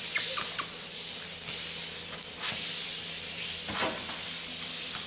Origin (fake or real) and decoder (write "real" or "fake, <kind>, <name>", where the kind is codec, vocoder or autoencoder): real